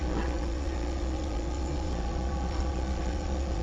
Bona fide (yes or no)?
no